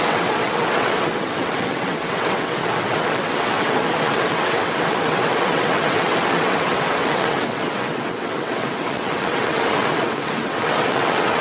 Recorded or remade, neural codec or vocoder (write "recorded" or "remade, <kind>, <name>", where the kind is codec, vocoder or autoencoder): remade, vocoder, WaveNeXt